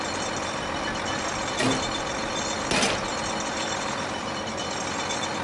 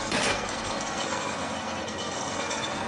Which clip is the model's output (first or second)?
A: second